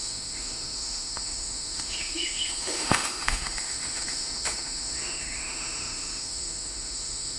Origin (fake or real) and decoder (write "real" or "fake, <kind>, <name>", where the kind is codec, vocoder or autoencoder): fake, autoencoder, DAC-VAE